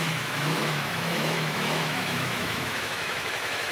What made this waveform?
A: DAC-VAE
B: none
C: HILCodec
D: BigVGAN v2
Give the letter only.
A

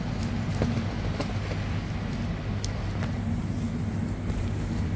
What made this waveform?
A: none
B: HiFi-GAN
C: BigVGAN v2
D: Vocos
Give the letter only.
A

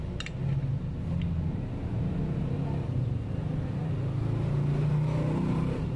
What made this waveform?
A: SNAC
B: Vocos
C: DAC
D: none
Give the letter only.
D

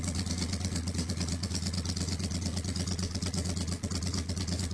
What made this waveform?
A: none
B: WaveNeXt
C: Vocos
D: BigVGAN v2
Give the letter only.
C